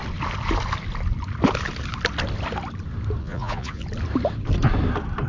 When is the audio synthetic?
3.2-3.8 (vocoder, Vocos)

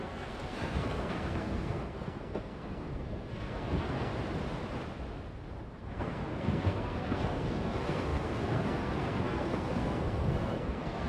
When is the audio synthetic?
0.0-4.1 (codec, SNAC); 5.7-11.1